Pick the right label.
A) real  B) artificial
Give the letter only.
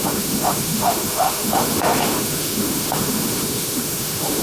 B